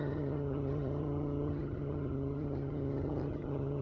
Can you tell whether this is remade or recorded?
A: remade